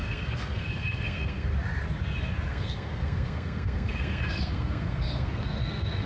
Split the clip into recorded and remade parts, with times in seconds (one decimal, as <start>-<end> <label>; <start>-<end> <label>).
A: 0.0-1.5 remade; 1.5-2.5 recorded; 2.5-6.1 remade